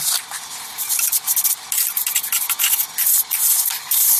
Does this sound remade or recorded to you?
recorded